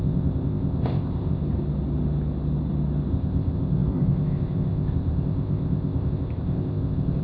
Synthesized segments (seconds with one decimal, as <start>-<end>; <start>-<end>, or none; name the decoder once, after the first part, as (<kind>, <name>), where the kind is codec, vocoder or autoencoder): 0.0-1.4 (codec, ZipCodec); 3.1-7.2